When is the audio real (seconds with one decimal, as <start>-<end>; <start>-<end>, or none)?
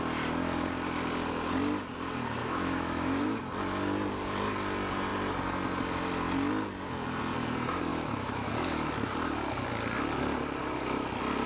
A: 0.0-2.4; 3.4-7.9; 8.5-11.5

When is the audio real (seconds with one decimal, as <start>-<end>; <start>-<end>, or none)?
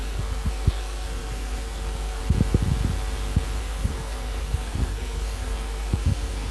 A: 2.2-3.6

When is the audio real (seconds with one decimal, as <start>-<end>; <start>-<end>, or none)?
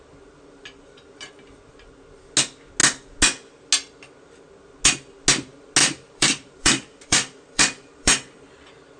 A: 0.0-5.8; 8.3-9.0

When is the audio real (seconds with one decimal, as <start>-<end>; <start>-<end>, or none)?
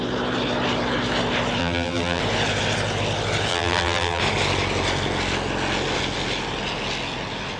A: 0.0-1.6; 2.2-3.5; 4.2-7.6